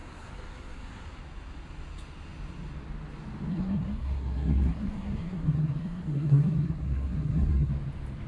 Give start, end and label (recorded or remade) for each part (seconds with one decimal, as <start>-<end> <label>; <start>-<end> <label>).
0.0-1.2 remade; 1.2-3.5 recorded; 3.5-7.7 remade; 7.7-8.3 recorded